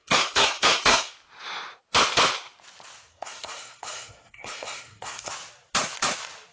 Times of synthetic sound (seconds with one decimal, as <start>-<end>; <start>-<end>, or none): 0.0-1.1; 3.1-5.3